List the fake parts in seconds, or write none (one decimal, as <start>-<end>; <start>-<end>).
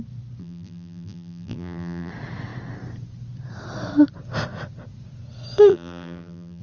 0.4-2.1; 5.7-6.6